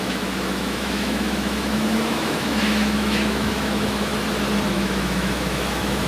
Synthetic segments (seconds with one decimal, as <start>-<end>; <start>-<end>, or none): 0.0-4.1; 4.7-6.1